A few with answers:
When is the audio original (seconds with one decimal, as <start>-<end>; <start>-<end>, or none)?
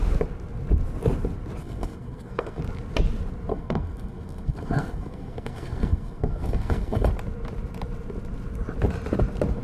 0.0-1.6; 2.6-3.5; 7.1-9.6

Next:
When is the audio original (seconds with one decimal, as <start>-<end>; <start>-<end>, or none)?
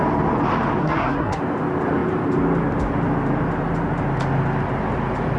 0.0-0.8; 1.4-5.4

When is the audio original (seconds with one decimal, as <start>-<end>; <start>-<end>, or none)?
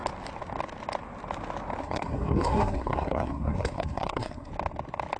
0.0-1.8; 4.5-5.2